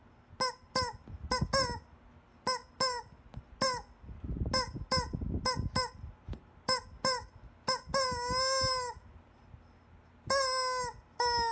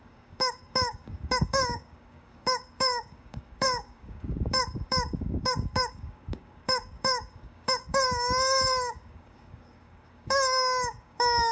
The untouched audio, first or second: first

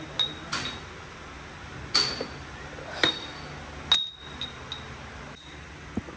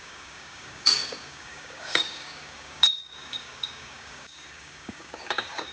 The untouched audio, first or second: first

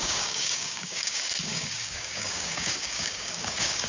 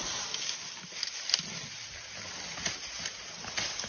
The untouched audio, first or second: second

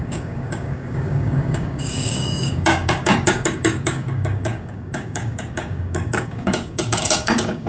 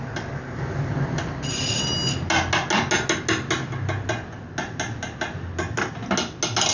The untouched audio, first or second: second